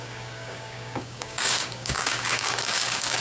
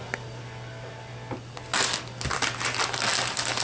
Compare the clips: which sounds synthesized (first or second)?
first